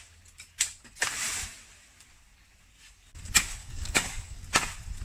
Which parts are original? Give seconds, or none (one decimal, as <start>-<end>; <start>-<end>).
0.0-3.6; 4.4-5.0